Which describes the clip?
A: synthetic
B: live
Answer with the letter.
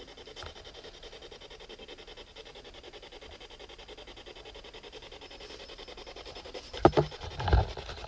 B